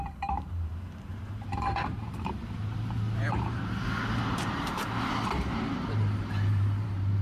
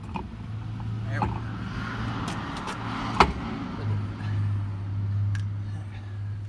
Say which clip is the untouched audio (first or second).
second